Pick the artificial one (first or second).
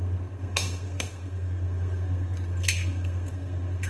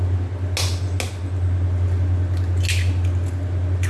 first